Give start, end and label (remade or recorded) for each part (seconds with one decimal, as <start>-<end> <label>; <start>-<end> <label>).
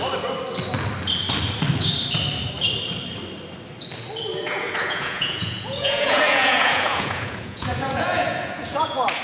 0.0-4.3 recorded; 4.3-9.2 remade